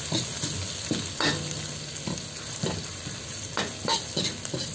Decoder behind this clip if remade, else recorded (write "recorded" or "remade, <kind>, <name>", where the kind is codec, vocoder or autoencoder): recorded